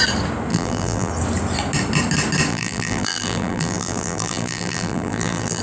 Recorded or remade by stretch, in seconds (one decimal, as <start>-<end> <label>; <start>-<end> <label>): 0.0-0.5 recorded; 0.5-1.1 remade; 1.1-2.5 recorded; 2.5-5.6 remade